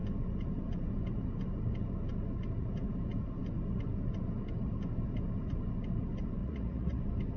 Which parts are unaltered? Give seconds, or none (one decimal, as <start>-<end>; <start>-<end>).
0.0-6.4; 7.0-7.4